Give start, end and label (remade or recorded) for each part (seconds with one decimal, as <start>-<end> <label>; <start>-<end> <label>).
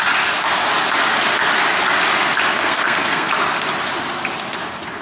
0.0-2.5 recorded; 2.5-3.3 remade; 3.3-5.0 recorded